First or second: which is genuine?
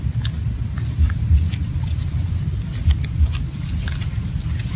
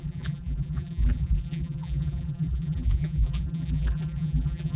first